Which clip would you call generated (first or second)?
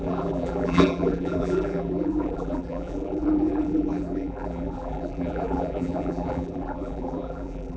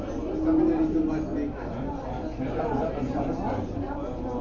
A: first